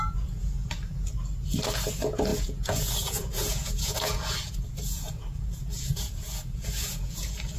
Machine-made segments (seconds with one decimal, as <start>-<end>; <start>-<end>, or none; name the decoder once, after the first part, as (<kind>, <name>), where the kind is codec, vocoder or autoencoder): 0.0-0.6 (vocoder, Vocos); 1.9-7.6